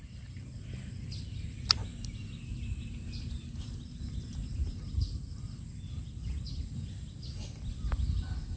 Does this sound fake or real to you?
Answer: real